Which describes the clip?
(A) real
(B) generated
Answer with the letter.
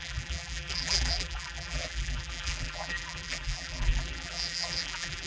B